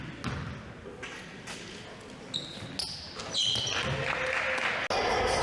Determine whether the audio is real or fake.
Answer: real